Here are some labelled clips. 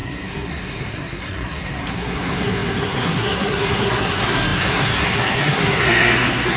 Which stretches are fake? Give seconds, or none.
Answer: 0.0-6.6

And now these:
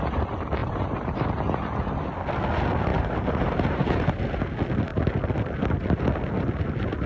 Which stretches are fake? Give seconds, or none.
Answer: 0.6-1.4; 2.9-4.4

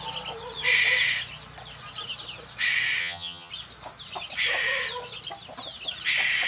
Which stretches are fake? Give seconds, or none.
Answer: 3.0-3.5

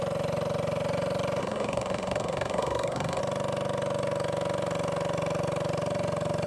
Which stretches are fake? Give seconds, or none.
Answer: 1.4-3.2

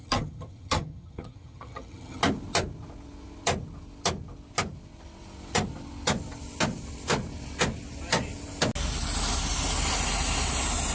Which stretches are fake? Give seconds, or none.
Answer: 0.0-2.2

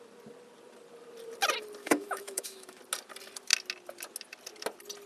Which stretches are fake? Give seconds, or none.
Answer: 1.8-2.8

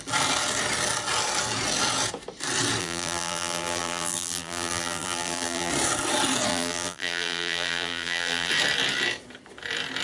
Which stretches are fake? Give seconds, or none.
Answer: 2.8-5.7; 6.5-8.5

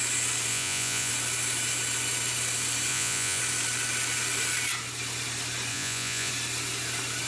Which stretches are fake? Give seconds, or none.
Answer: 0.5-1.1; 2.9-3.4; 5.7-6.3